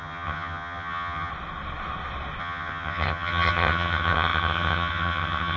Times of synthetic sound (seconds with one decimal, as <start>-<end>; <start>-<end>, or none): 0.0-1.3; 2.4-5.6